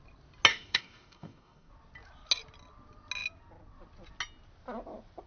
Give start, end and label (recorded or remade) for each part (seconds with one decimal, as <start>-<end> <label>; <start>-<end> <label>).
0.0-0.5 recorded; 0.5-1.7 remade; 1.7-5.3 recorded